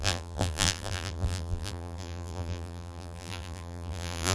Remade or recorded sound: remade